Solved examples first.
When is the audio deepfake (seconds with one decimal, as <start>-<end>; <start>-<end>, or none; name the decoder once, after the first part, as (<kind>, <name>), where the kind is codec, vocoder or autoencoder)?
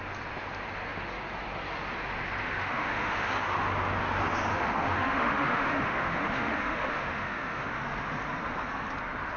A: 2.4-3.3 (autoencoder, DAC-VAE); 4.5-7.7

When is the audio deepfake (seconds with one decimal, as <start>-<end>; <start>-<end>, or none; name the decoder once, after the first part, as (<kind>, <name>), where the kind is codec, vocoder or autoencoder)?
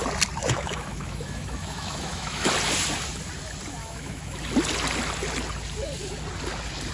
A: 0.4-2.5 (autoencoder, DAC-VAE); 3.8-4.5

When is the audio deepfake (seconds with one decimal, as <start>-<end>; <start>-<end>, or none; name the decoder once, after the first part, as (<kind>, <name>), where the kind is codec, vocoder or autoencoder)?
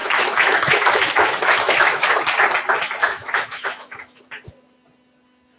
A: 0.0-2.1 (autoencoder, DAC-VAE); 3.0-4.2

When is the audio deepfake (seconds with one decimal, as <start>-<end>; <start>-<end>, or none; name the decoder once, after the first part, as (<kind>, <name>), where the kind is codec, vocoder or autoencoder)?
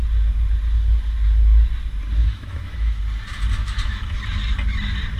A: 2.2-3.0 (autoencoder, DAC-VAE); 3.6-4.1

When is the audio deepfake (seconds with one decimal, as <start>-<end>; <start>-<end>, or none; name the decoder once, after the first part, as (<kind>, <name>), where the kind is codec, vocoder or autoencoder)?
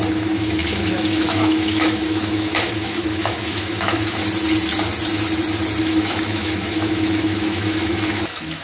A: 0.0-4.2 (autoencoder, DAC-VAE); 5.8-8.6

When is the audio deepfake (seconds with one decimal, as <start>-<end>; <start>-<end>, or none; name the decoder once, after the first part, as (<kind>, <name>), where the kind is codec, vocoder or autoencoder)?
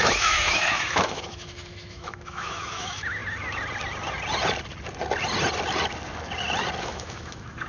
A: 0.0-3.2 (autoencoder, DAC-VAE); 6.8-7.7